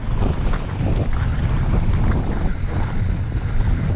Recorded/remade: recorded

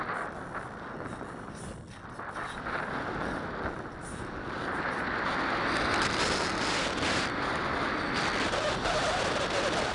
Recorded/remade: recorded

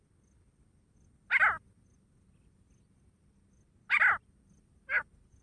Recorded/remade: recorded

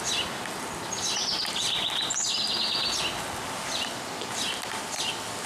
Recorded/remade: recorded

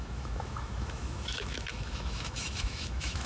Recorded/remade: remade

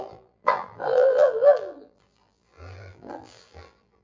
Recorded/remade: remade